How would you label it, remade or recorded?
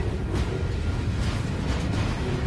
recorded